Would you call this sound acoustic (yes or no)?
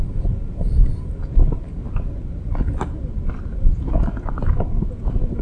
yes